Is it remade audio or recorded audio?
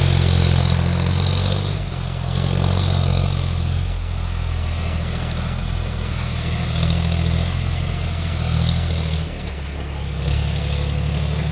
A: remade